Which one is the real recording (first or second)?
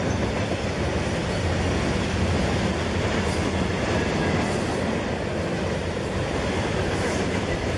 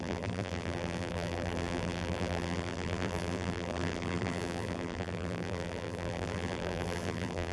first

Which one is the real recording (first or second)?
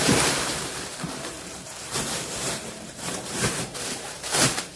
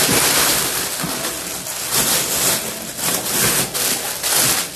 second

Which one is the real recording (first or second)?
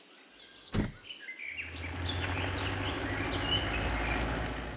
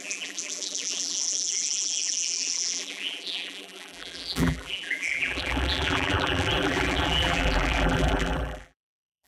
first